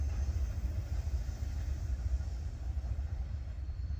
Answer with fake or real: real